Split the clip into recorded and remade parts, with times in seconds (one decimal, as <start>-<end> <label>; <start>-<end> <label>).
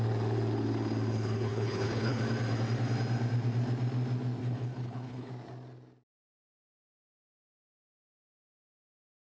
0.0-1.1 recorded; 1.1-2.2 remade; 2.2-4.4 recorded; 4.4-5.3 remade; 5.3-9.4 recorded